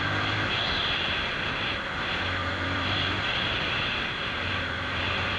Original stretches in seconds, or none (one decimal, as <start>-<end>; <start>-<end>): 0.0-2.4